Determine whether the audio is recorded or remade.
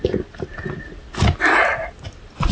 recorded